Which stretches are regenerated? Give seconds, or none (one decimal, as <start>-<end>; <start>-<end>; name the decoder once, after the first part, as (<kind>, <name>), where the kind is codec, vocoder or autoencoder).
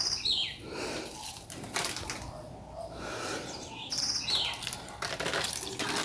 none